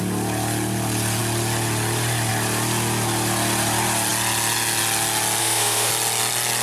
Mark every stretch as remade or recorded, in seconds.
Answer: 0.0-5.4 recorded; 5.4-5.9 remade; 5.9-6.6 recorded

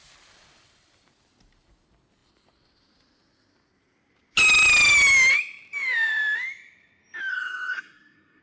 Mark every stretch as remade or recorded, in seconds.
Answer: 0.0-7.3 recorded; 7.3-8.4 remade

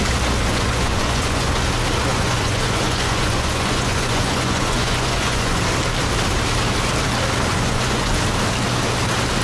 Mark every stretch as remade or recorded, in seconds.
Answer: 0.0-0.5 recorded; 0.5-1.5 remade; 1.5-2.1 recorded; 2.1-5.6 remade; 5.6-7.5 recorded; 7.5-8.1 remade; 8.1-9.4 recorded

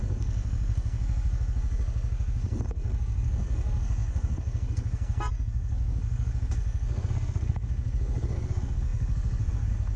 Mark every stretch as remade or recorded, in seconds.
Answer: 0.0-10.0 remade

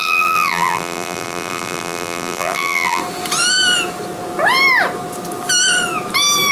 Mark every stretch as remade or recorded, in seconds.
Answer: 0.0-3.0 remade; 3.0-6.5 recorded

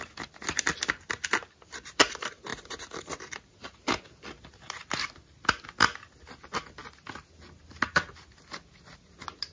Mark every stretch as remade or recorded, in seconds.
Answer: 0.0-9.5 recorded

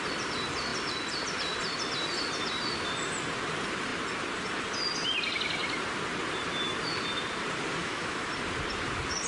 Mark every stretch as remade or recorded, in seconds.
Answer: 0.0-7.8 recorded; 7.8-8.3 remade; 8.3-9.3 recorded

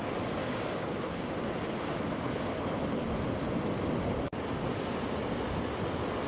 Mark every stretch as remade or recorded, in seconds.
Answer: 0.0-0.4 recorded; 0.4-1.1 remade; 1.1-6.3 recorded